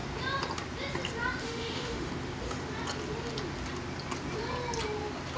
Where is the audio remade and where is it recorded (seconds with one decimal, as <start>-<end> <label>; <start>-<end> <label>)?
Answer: 0.0-1.4 recorded; 1.4-2.1 remade; 2.1-5.4 recorded